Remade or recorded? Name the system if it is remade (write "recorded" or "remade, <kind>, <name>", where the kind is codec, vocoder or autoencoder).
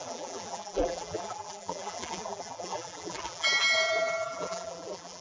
remade, vocoder, BigVGAN v2